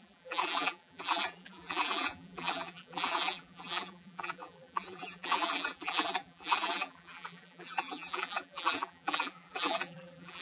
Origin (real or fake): fake